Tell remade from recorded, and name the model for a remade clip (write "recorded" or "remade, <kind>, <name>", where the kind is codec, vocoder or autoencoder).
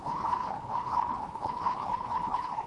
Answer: remade, codec, HILCodec